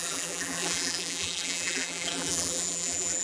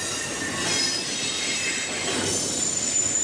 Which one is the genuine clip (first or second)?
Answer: second